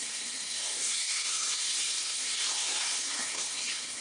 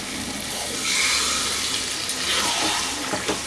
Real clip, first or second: second